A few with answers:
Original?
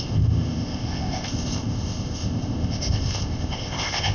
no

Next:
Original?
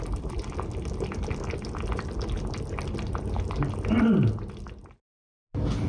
yes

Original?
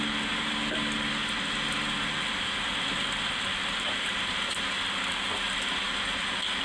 yes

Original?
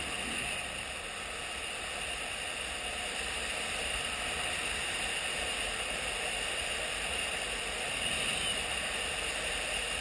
yes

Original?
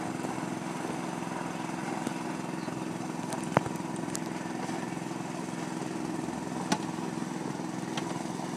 yes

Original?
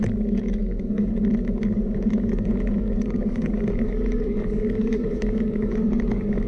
no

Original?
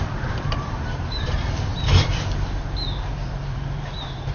no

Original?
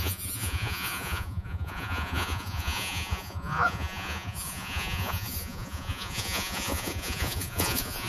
no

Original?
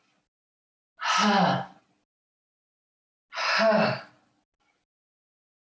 yes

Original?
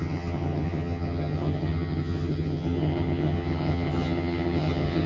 no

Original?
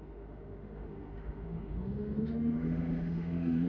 no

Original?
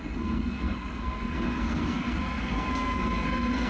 no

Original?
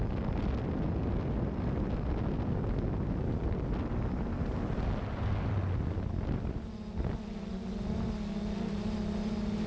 yes